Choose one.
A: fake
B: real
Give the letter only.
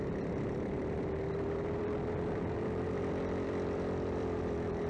A